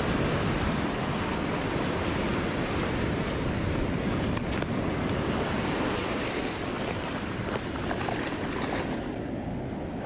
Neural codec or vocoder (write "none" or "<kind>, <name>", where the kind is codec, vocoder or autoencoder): none